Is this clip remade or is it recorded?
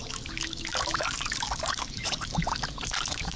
remade